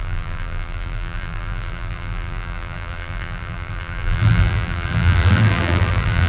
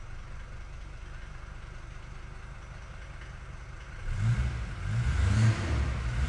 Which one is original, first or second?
second